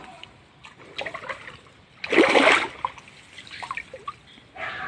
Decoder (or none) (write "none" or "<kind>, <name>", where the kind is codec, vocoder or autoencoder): none